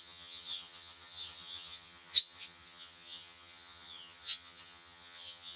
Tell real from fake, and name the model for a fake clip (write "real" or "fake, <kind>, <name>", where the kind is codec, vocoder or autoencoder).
fake, vocoder, HiFi-GAN